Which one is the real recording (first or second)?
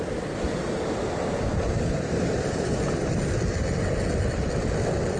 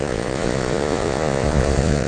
first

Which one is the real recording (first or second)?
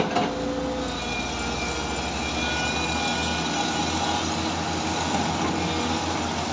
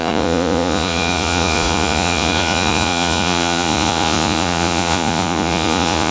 first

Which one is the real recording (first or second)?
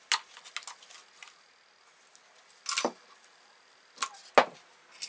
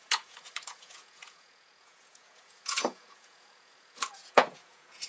first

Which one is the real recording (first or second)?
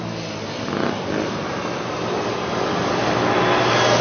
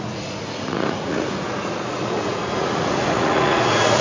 first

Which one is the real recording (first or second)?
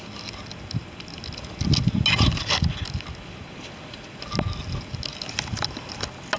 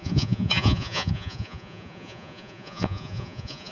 first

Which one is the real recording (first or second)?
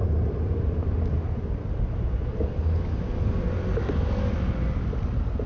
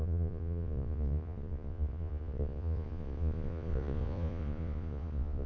first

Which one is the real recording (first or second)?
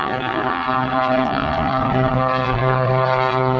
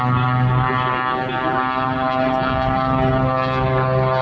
second